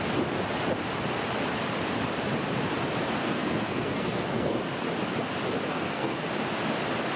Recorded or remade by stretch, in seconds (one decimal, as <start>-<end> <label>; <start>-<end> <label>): 0.0-3.2 recorded; 3.2-4.6 remade; 4.6-5.7 recorded; 5.7-6.3 remade; 6.3-7.2 recorded